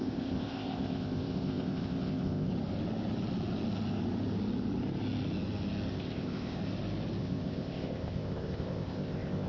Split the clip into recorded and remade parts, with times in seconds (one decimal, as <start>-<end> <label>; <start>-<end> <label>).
0.0-2.5 remade; 2.5-5.9 recorded; 5.9-6.6 remade; 6.6-7.2 recorded; 7.2-9.5 remade